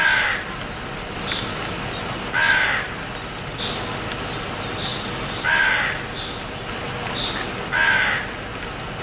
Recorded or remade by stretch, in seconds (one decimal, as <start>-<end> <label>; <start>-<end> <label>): 0.0-4.9 recorded; 4.9-6.6 remade; 6.6-9.0 recorded